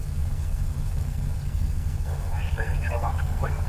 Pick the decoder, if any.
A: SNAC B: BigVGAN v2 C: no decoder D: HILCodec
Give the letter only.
A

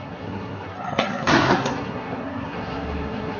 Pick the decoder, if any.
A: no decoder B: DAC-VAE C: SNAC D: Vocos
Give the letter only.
C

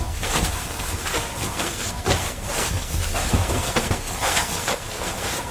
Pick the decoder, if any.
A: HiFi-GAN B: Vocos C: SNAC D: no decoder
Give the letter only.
C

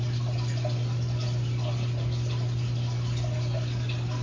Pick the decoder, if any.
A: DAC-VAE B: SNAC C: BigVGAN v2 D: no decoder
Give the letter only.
D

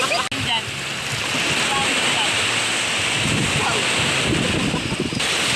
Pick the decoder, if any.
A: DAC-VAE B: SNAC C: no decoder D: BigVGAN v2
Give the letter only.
C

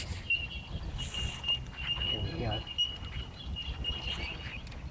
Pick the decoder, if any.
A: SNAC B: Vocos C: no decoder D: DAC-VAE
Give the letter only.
C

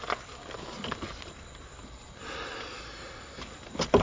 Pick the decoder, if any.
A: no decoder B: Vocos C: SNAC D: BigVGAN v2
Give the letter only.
A